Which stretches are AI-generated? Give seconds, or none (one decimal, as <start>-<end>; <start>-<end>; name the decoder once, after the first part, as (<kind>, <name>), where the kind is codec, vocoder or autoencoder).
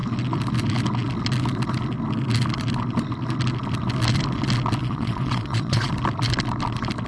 4.8-5.9 (vocoder, Vocos)